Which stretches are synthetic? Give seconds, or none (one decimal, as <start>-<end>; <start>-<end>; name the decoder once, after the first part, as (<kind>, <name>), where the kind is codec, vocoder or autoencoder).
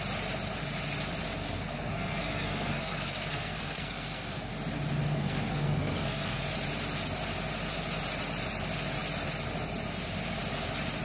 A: 1.4-4.5 (codec, SNAC); 5.1-6.4